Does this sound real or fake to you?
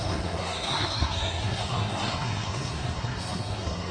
fake